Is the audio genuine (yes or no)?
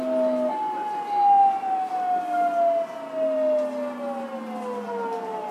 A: yes